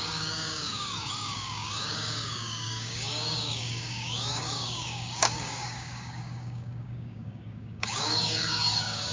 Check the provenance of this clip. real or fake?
fake